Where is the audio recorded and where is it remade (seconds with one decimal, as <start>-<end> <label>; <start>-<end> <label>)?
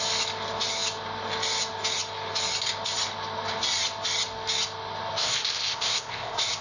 0.0-5.2 recorded; 5.2-6.6 remade